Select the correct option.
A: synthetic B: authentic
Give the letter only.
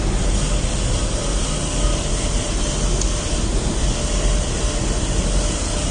B